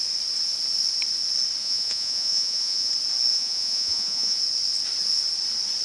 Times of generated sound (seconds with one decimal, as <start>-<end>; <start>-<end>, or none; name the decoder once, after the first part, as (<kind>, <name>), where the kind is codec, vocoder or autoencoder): 1.6-2.9 (vocoder, Vocos); 3.3-4.4